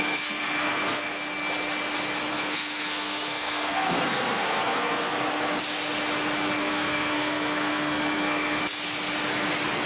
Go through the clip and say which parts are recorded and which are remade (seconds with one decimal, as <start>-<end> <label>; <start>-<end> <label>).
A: 0.0-1.2 remade; 1.2-2.3 recorded; 2.3-5.1 remade; 5.1-6.6 recorded; 6.6-8.6 remade; 8.6-9.9 recorded